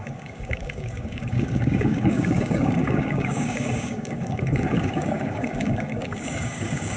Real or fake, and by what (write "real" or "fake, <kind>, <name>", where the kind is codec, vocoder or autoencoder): fake, codec, DAC